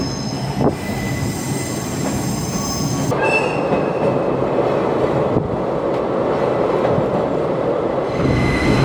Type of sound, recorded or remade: recorded